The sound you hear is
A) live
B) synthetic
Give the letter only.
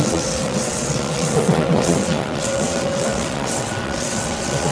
B